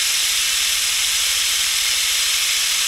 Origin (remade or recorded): recorded